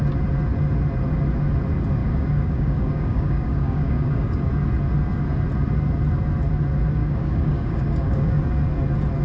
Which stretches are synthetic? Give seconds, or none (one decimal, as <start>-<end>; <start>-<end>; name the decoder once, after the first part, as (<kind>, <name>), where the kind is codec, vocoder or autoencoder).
2.0-4.5 (codec, DAC); 7.0-8.4